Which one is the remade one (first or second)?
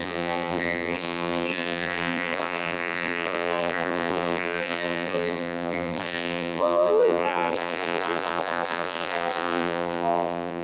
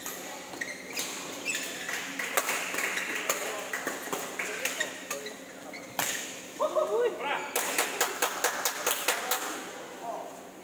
first